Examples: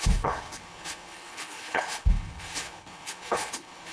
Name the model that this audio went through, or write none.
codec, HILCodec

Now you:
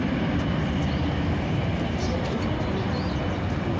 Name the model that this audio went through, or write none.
none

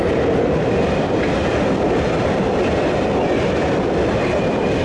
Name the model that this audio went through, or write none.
none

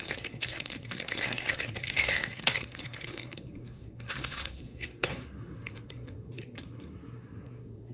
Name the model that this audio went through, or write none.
codec, SNAC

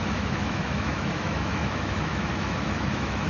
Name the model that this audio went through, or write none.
autoencoder, DAC-VAE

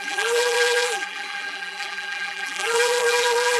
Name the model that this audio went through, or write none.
vocoder, BigVGAN v2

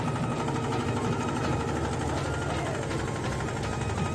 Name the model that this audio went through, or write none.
none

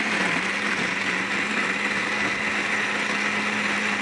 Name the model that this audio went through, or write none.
none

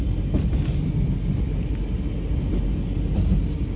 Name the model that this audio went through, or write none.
none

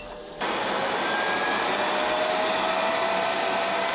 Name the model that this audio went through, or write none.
none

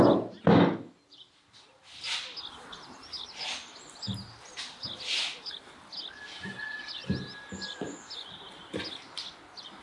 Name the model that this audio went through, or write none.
none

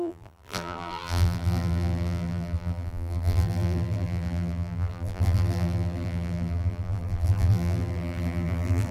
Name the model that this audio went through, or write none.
vocoder, BigVGAN v2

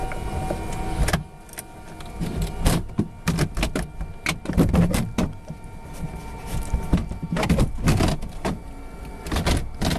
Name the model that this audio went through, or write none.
none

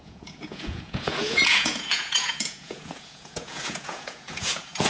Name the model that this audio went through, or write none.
vocoder, Vocos